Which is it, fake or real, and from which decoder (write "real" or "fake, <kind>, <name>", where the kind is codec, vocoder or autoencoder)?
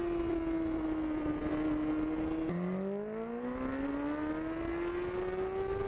real